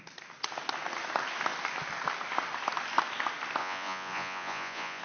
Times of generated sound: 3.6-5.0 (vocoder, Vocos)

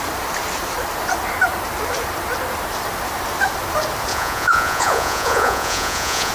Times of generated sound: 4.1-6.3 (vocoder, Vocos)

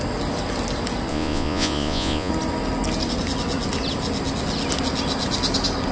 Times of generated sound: 1.1-2.3 (vocoder, Vocos)

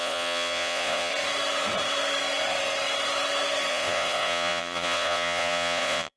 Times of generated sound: 0.0-1.1 (vocoder, Vocos); 3.7-6.2

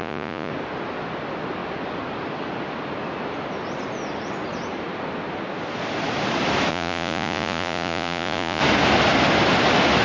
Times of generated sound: 0.0-0.5 (vocoder, Vocos); 6.7-8.6